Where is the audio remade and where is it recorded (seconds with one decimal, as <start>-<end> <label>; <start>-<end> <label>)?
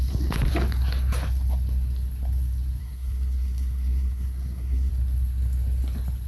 0.0-2.8 recorded; 2.8-4.9 remade; 4.9-6.3 recorded